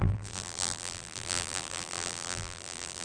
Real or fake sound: fake